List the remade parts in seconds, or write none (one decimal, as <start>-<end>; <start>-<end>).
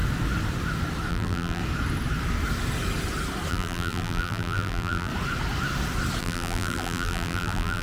1.1-1.6; 3.5-5.1; 6.2-7.8